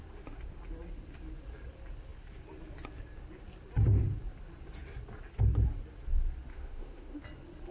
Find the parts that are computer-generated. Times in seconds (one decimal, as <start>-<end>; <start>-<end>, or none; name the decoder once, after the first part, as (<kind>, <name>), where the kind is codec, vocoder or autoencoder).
6.5-7.2 (autoencoder, DAC-VAE)